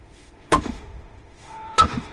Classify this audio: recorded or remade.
remade